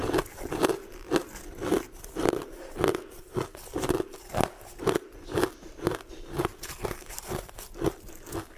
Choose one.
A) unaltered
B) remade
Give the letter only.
A